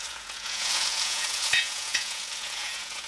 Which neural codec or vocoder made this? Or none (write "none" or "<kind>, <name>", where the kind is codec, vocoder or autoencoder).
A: vocoder, Vocos